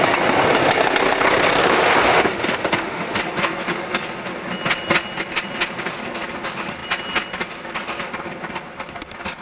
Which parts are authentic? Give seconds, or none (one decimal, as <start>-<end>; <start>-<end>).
0.0-1.6; 3.2-9.4